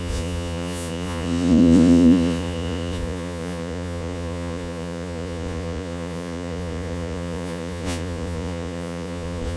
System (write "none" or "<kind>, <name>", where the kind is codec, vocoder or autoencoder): vocoder, Vocos